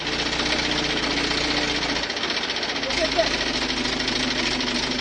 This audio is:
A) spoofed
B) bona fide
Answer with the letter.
B